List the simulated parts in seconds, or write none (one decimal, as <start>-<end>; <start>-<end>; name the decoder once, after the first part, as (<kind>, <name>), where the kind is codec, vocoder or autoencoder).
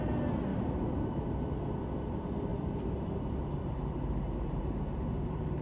0.5-1.3 (vocoder, BigVGAN v2); 2.5-4.6